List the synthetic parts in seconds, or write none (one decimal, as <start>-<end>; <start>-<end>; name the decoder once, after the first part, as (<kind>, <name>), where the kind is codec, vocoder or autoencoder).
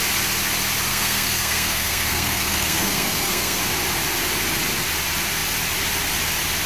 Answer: 0.9-3.6 (codec, SNAC)